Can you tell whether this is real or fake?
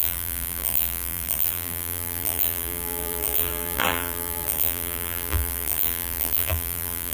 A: fake